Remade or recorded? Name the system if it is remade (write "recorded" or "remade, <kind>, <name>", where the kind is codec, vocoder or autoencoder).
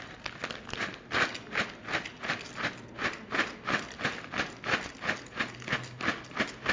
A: recorded